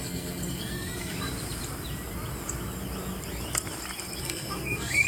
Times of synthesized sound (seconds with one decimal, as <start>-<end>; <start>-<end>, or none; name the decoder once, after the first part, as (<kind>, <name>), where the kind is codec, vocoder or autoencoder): 0.0-1.1 (codec, SNAC); 4.2-5.1